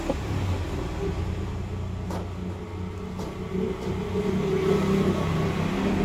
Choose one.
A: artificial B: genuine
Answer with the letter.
B